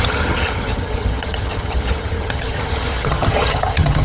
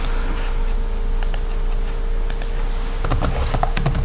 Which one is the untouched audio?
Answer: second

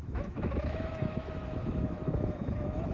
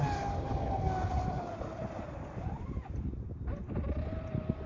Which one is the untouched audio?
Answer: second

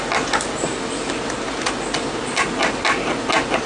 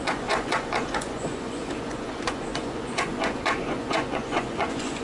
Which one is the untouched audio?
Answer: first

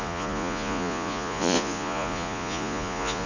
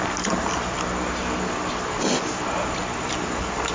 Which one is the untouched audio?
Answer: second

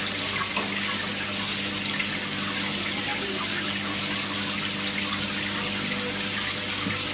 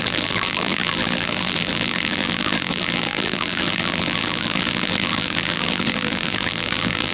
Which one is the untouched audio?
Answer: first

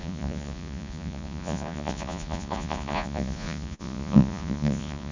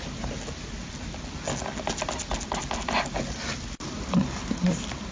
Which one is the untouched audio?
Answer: second